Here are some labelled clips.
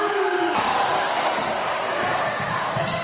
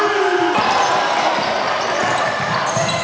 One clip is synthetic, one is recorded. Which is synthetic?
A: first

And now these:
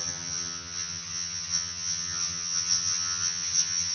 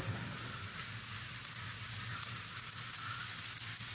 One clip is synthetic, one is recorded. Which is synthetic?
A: first